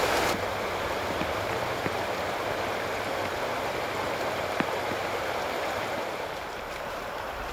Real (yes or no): no